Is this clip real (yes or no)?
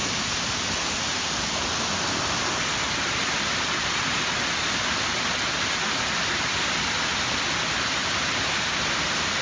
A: yes